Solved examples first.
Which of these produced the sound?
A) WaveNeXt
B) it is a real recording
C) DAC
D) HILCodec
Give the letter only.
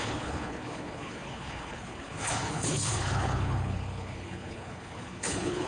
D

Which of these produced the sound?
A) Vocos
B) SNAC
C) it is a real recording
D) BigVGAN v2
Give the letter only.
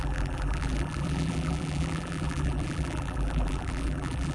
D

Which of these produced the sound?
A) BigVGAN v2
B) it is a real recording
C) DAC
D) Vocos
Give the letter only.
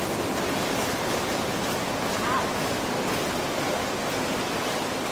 B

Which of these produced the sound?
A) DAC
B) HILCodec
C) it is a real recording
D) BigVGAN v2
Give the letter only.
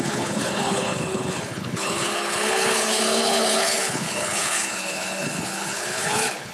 B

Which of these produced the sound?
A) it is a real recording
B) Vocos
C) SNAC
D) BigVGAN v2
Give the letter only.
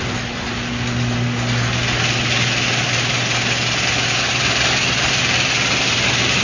A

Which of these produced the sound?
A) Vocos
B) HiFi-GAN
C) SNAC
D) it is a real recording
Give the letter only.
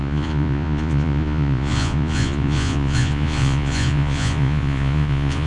A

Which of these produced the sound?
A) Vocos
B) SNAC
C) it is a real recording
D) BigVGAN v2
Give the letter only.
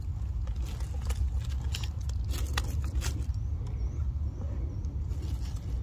C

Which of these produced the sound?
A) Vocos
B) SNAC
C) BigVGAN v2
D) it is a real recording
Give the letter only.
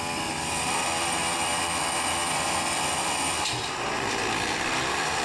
D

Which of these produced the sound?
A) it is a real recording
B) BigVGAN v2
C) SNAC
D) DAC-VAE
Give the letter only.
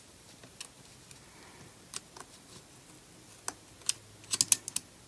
A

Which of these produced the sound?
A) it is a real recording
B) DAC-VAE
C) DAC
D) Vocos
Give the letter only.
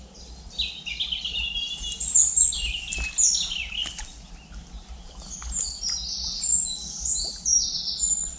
A